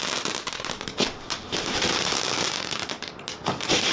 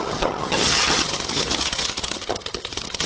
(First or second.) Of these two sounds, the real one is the first